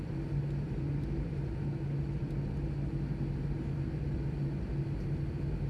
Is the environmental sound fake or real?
real